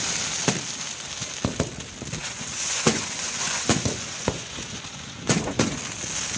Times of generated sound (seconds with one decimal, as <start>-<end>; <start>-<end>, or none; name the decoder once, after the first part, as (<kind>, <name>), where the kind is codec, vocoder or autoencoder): 2.2-5.8 (vocoder, Vocos)